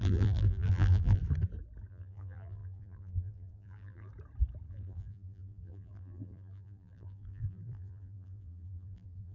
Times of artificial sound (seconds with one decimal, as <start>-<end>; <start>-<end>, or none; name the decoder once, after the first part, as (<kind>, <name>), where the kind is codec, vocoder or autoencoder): 0.0-1.2 (vocoder, BigVGAN v2); 1.9-4.1; 4.7-9.3